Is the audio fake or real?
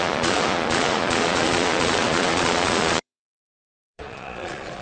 fake